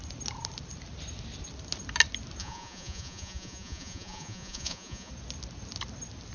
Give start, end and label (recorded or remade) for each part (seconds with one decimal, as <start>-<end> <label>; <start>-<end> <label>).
0.0-2.4 recorded; 2.4-5.1 remade; 5.1-6.3 recorded